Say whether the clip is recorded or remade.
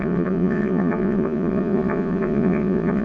remade